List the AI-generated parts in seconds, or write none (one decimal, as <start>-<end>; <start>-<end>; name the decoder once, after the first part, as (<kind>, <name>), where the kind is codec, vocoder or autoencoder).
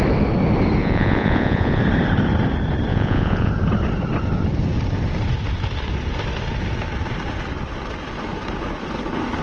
0.8-1.8 (vocoder, Vocos); 2.9-3.5